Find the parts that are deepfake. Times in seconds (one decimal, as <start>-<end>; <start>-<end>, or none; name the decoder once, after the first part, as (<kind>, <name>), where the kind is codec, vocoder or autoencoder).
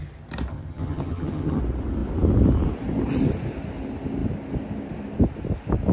0.5-1.6 (vocoder, HiFi-GAN)